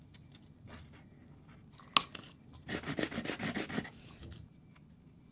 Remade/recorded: recorded